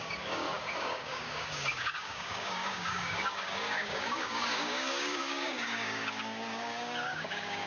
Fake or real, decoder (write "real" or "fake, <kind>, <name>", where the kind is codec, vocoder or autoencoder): fake, codec, DAC